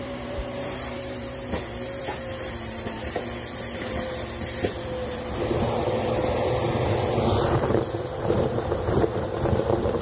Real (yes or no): no